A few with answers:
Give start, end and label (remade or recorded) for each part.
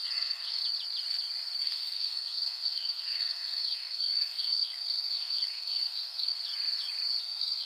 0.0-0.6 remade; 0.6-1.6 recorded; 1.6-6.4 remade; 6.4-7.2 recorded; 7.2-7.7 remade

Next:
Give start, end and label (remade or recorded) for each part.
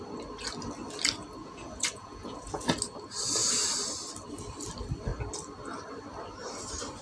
0.0-1.4 recorded; 1.4-2.7 remade; 2.7-7.0 recorded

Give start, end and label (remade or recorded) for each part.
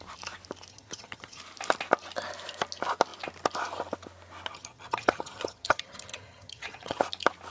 0.0-0.7 recorded; 0.7-1.4 remade; 1.4-4.5 recorded; 4.5-7.0 remade; 7.0-7.5 recorded